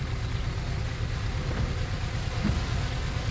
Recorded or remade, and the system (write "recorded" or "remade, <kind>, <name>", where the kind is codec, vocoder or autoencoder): recorded